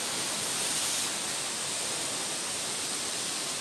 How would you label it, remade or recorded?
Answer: recorded